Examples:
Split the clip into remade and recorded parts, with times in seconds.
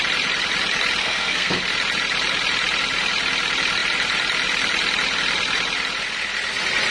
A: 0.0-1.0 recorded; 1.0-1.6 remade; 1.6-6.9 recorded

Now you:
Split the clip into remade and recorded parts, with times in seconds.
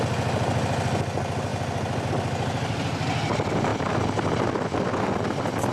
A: 0.0-5.7 recorded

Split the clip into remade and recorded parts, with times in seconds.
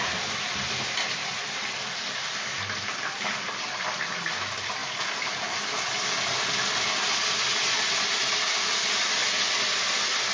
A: 0.0-10.3 recorded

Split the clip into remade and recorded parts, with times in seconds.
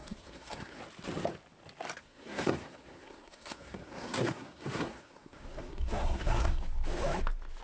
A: 0.0-0.8 remade; 0.8-2.0 recorded; 2.0-6.6 remade; 6.6-7.6 recorded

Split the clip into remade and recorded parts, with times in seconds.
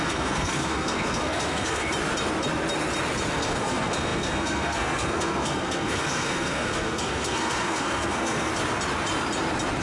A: 0.0-1.9 remade; 1.9-3.3 recorded; 3.3-8.5 remade; 8.5-9.8 recorded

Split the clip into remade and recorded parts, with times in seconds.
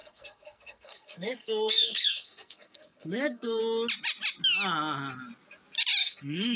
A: 0.0-3.6 remade; 3.6-6.0 recorded; 6.0-6.6 remade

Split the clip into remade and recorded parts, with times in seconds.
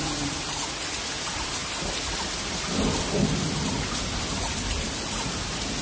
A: 0.0-5.8 recorded